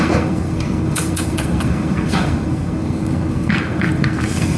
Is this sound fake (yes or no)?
yes